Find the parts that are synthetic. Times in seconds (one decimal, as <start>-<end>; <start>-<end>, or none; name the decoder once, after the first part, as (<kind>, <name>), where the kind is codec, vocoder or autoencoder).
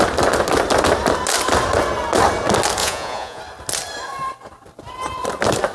2.8-3.4 (vocoder, Vocos)